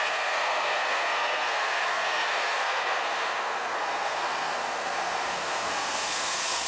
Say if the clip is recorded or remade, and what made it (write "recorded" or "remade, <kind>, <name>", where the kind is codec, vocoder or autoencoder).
remade, codec, SNAC